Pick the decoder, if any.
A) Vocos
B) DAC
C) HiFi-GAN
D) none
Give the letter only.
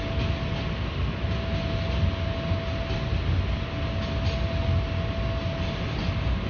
D